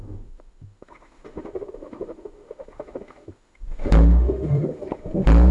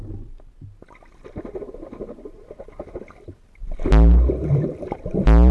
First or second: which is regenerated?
first